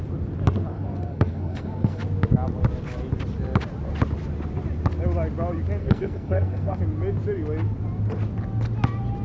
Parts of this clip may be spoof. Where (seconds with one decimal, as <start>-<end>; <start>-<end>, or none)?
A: 0.7-2.0; 5.8-6.8